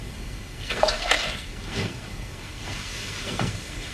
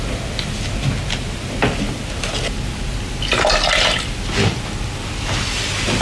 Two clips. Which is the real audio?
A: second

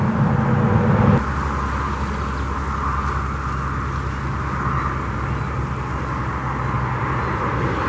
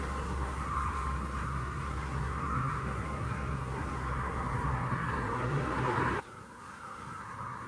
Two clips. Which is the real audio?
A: first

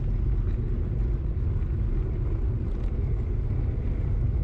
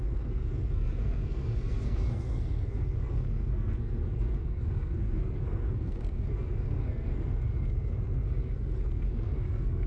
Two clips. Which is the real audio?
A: first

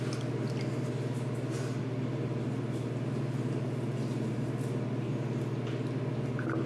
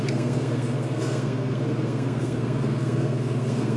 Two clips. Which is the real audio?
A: first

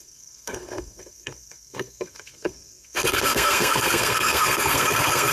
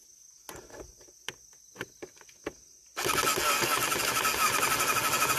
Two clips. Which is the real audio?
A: second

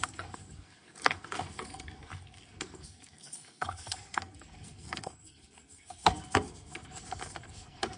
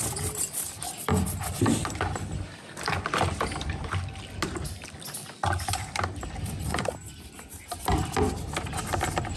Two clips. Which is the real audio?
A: second